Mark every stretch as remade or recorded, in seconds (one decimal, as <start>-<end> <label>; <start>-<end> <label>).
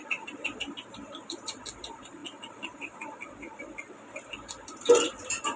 0.0-5.6 remade